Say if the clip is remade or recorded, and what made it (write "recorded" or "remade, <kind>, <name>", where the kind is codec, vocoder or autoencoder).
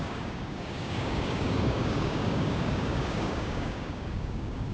remade, codec, DAC